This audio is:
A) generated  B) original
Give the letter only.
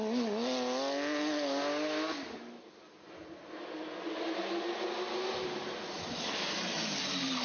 B